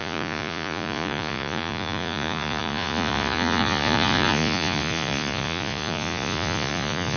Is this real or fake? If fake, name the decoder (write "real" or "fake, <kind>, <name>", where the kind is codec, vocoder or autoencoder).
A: fake, vocoder, Vocos